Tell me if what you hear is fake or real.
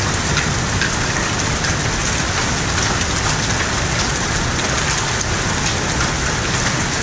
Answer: real